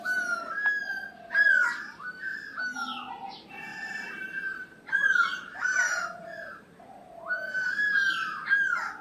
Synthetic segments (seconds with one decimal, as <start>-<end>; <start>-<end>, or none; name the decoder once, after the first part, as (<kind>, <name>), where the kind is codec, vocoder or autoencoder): 2.3-3.1 (vocoder, BigVGAN v2); 3.7-7.2